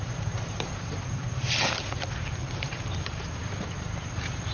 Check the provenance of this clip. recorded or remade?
remade